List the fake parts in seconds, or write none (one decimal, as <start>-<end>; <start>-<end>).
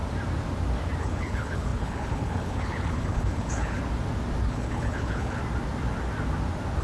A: 1.0-3.8; 4.5-5.4